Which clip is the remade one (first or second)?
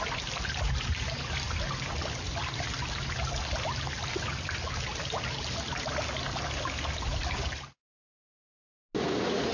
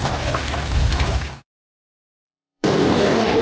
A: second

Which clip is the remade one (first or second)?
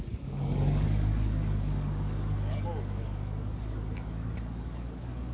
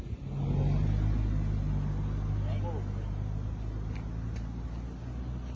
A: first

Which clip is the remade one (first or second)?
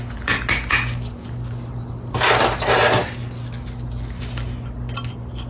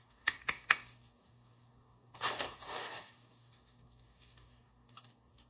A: second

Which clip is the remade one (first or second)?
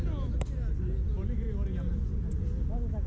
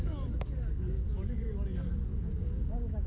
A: second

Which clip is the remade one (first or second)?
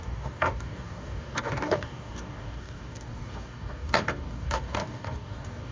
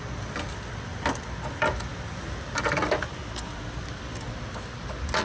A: first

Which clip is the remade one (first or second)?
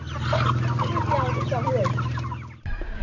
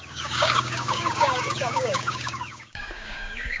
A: second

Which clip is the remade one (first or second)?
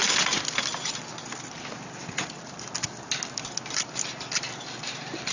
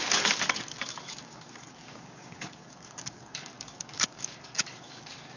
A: second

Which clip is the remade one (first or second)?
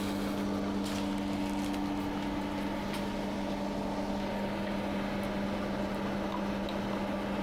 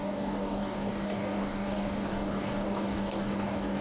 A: second